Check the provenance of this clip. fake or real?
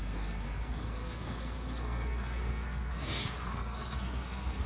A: fake